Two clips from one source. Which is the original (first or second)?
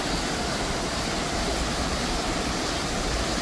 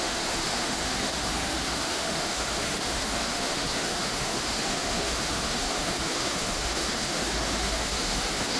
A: first